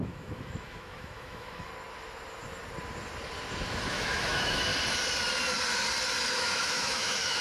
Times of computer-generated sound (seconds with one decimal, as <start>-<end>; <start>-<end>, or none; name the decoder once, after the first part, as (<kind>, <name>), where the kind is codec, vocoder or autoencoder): 0.0-1.7 (autoencoder, DAC-VAE); 3.8-4.7; 6.3-7.4